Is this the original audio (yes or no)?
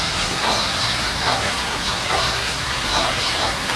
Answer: no